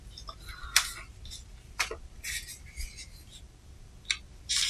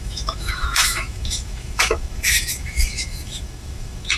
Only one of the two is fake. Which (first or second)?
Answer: second